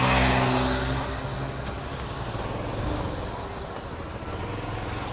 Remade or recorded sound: recorded